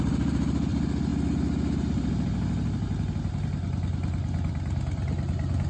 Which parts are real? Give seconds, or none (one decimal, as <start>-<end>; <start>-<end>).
0.0-5.7